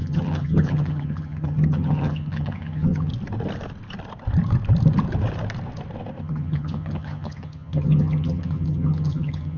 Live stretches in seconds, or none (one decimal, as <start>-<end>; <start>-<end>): 3.1-6.2